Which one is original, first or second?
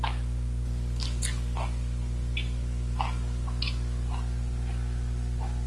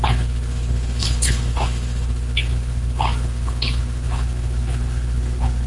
first